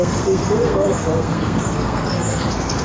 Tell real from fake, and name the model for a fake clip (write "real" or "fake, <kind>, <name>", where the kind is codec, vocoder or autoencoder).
fake, codec, SNAC